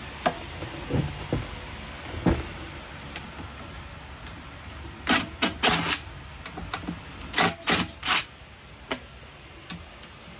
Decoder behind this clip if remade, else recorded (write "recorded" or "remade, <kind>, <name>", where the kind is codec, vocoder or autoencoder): recorded